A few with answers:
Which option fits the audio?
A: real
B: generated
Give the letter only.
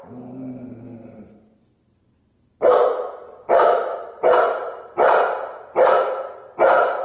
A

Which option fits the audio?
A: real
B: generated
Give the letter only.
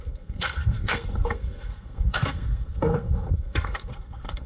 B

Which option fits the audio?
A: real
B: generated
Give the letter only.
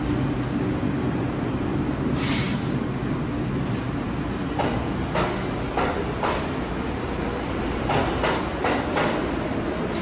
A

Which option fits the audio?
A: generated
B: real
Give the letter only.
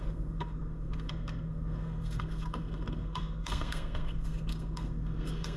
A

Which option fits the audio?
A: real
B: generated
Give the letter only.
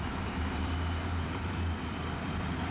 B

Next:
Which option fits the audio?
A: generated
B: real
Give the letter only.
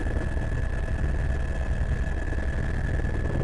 B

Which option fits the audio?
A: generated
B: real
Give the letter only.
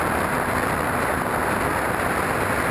B